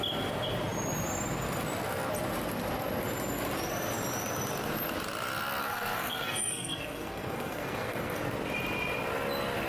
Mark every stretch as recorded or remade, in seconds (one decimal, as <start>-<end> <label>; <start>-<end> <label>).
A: 0.0-5.6 recorded; 5.6-8.2 remade; 8.2-9.7 recorded